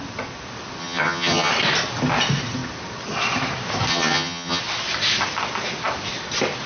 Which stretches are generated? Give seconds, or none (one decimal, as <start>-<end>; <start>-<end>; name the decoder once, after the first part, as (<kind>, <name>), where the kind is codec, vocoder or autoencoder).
0.8-1.5 (vocoder, HiFi-GAN); 3.9-4.6